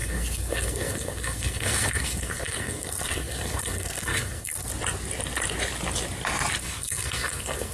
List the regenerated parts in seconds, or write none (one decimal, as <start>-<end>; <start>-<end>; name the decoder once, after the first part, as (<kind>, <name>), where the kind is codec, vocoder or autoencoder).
0.0-4.7 (codec, SNAC); 6.6-7.7